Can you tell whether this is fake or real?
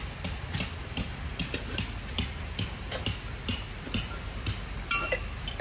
real